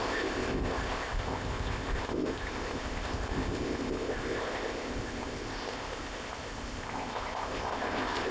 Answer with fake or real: fake